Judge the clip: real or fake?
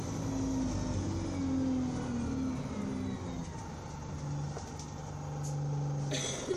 real